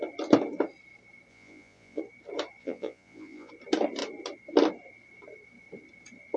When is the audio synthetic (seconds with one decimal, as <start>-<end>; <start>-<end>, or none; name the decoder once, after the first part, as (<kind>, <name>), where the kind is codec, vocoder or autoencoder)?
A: 1.3-2.0 (vocoder, Vocos); 2.6-3.5